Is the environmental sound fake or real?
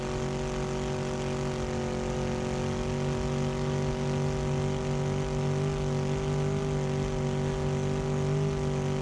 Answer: real